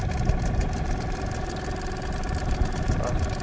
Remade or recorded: recorded